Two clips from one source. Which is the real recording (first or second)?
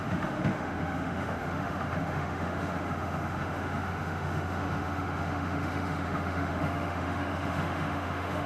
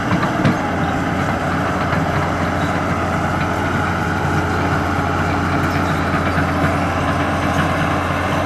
second